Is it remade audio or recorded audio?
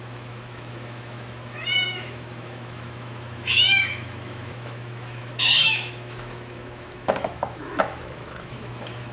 remade